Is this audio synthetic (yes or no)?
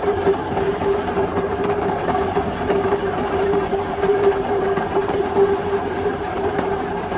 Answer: yes